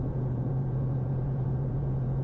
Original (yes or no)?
no